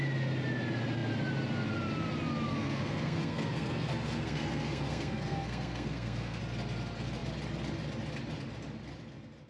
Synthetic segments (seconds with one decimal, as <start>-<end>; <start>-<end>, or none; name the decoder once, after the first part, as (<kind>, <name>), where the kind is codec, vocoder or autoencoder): 2.5-6.4 (codec, SNAC)